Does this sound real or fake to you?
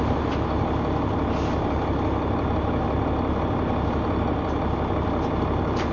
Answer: real